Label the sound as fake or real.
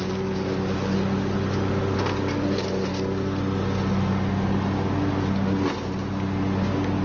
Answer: real